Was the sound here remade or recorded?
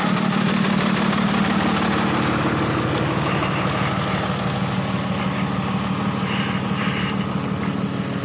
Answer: recorded